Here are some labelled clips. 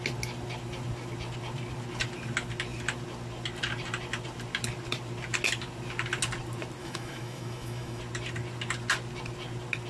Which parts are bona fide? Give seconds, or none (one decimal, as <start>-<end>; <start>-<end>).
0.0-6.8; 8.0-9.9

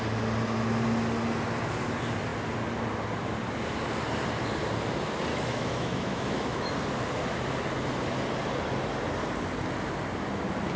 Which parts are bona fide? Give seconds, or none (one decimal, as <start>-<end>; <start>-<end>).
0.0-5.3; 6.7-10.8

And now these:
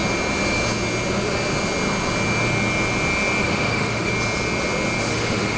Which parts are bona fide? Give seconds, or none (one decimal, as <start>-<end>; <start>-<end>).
0.0-3.4; 4.1-5.0

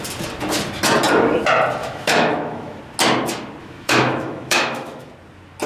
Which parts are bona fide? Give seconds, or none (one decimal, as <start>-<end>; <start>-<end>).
0.0-1.8; 2.8-3.6; 5.1-5.7

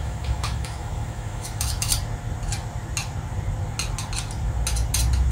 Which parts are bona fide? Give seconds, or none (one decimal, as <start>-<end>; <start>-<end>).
1.9-5.3

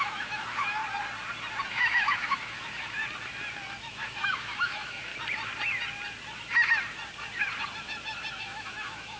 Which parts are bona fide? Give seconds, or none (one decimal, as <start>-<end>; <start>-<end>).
0.8-1.7; 3.0-3.8; 5.1-8.3

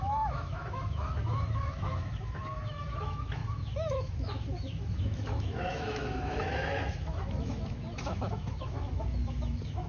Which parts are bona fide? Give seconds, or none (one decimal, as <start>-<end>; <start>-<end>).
none

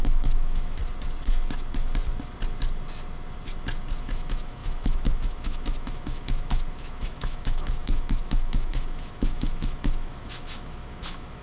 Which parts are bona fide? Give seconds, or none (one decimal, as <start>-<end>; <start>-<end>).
0.8-4.0